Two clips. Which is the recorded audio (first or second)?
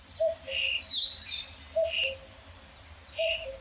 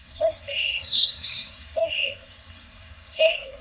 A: first